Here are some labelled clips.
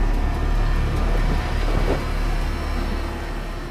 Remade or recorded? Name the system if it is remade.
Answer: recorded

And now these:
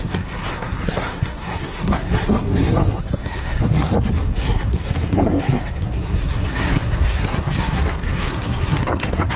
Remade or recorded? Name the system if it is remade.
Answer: remade, codec, SNAC